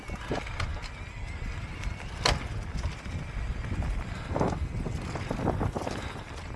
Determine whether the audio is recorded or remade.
recorded